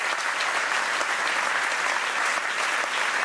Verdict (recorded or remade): recorded